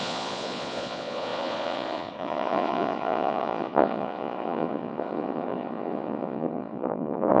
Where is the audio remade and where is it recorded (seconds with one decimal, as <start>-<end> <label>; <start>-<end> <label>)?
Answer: 0.0-7.4 remade